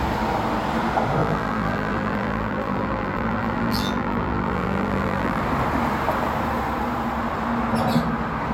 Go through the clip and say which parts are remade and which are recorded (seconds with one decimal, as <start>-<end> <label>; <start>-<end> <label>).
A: 0.0-1.2 recorded; 1.2-5.4 remade; 5.4-8.5 recorded